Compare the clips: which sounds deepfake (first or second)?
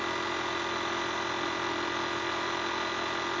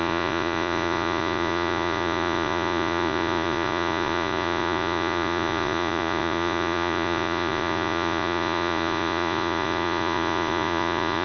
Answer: second